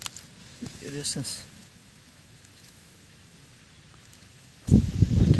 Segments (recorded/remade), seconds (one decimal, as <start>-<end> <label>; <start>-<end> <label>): 0.0-0.4 recorded; 0.4-3.6 remade; 3.6-4.0 recorded; 4.0-4.9 remade; 4.9-5.4 recorded